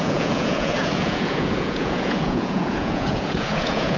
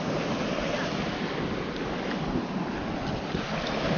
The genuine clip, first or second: second